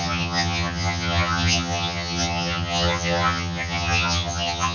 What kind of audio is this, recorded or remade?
remade